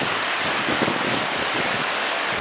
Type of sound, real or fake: fake